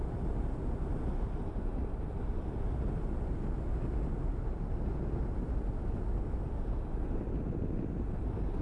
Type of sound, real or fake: real